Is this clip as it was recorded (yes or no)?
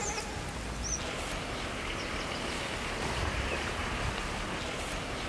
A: yes